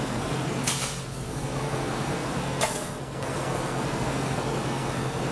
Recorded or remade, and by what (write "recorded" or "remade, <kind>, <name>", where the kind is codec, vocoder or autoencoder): remade, codec, SNAC